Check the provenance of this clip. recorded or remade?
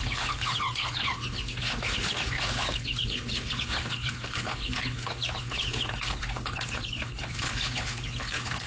remade